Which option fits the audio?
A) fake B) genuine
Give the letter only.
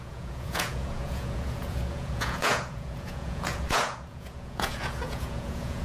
A